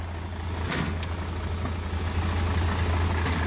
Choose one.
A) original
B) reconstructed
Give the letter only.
A